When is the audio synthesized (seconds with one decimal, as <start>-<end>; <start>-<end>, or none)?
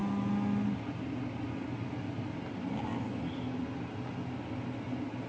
none